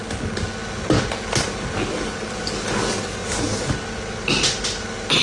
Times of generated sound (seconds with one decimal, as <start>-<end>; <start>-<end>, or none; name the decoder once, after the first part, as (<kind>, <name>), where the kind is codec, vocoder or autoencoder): none